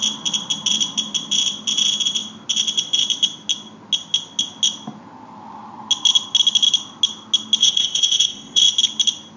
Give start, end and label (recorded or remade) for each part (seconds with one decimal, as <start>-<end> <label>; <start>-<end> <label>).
0.0-7.6 recorded; 7.6-8.6 remade; 8.6-9.4 recorded